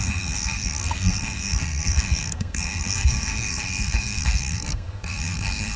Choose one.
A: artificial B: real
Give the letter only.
A